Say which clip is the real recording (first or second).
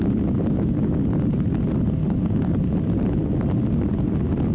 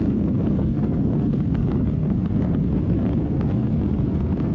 first